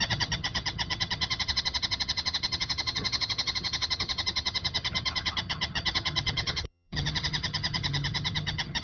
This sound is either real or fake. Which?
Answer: fake